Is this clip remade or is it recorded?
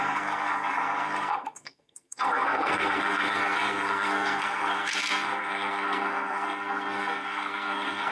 remade